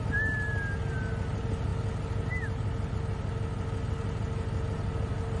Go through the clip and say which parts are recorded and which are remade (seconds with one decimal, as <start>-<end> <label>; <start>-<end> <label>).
0.0-5.4 recorded